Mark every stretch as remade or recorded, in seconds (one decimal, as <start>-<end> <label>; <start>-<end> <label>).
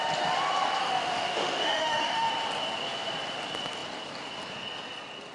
0.0-0.8 recorded; 0.8-2.3 remade; 2.3-5.3 recorded